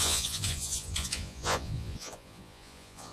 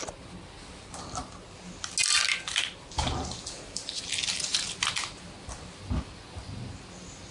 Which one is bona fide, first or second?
second